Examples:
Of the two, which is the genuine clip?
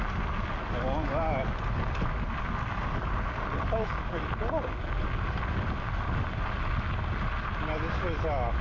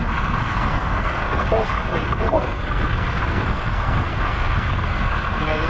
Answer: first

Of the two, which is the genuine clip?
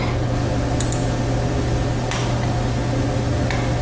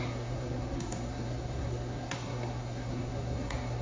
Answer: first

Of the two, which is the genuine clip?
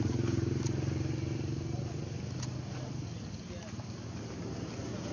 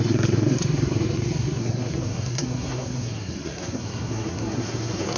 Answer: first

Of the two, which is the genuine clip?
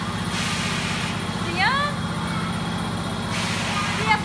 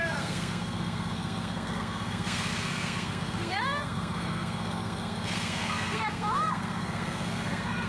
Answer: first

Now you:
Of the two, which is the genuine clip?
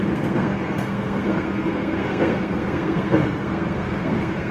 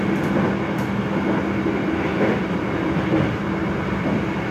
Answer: second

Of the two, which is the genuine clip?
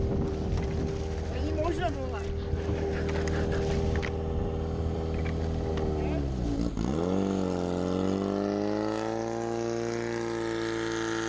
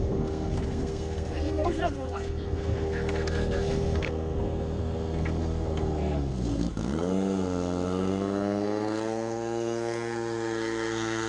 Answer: first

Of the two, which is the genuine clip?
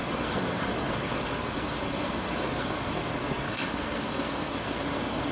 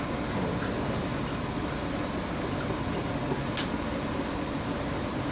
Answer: second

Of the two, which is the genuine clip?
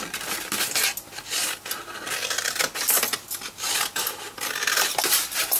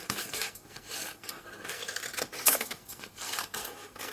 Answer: first